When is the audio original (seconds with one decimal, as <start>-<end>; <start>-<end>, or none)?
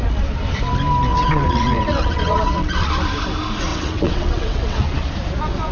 0.0-1.1; 2.9-3.7; 4.8-5.7